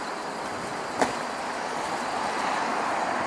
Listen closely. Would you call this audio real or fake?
real